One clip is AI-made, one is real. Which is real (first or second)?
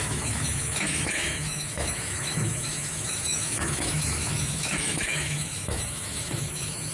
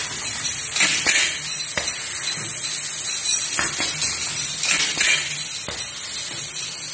second